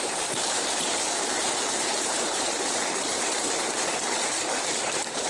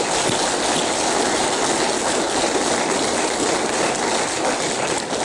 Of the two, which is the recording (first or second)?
second